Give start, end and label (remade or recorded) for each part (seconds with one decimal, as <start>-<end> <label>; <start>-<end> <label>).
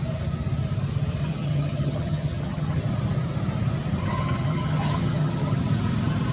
0.0-1.2 recorded; 1.2-2.8 remade; 2.8-4.1 recorded; 4.1-5.6 remade; 5.6-6.3 recorded